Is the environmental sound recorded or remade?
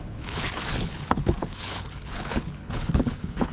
remade